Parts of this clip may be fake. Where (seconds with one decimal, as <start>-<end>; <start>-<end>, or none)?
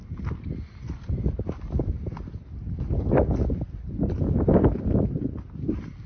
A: none